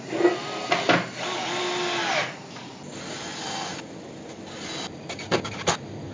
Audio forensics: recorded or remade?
recorded